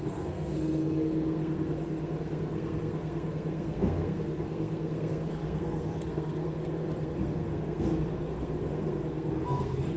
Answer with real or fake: fake